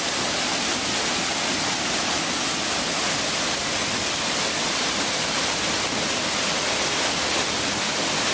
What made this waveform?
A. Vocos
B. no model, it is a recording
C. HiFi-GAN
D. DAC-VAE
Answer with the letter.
B